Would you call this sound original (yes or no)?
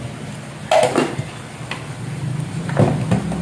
yes